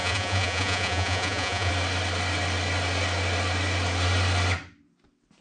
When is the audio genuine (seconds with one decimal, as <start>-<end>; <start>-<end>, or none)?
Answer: 1.7-5.4